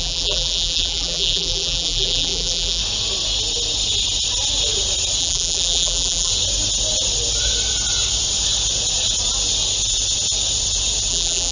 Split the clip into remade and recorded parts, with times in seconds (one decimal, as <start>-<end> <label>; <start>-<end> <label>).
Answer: 0.0-2.8 remade; 2.8-5.2 recorded; 5.2-6.3 remade; 6.3-11.1 recorded; 11.1-11.5 remade